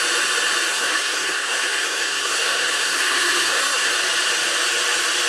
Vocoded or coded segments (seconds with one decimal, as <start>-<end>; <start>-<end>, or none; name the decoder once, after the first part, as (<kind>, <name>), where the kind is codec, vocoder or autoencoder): 0.7-3.9 (codec, SNAC)